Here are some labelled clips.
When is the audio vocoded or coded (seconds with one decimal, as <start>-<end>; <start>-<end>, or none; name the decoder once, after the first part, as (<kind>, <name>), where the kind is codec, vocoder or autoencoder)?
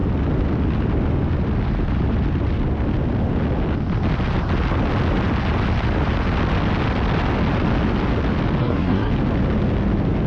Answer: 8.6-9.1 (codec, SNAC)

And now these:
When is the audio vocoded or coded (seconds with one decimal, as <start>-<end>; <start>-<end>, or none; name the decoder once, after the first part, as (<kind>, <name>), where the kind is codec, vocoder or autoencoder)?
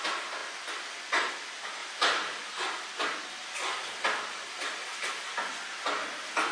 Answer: 1.8-2.6 (vocoder, BigVGAN v2); 3.4-5.1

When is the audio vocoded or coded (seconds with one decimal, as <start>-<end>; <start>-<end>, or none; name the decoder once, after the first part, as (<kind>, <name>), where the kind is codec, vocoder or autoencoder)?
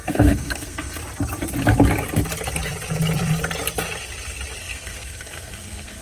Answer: 0.0-1.0 (codec, SNAC); 4.6-6.0